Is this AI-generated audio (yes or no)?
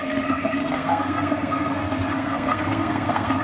yes